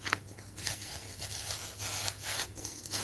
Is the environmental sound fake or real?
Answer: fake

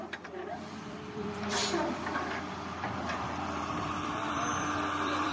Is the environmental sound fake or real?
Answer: fake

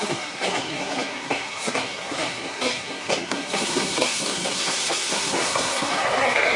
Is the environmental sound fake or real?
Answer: fake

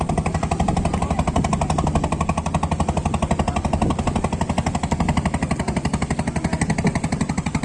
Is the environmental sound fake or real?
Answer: real